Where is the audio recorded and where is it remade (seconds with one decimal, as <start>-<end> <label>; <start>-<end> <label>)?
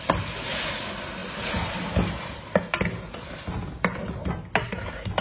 0.0-1.2 recorded; 1.2-4.3 remade; 4.3-5.2 recorded